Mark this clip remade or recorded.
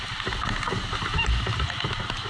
recorded